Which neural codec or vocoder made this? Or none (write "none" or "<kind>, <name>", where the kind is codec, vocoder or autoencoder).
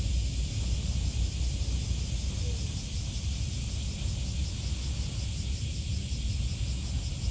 none